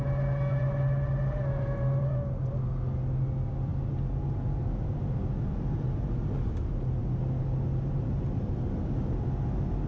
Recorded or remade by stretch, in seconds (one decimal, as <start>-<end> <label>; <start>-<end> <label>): 0.0-9.9 recorded